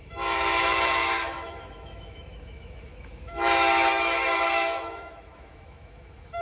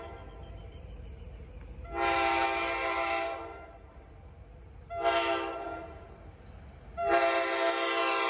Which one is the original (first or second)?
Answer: second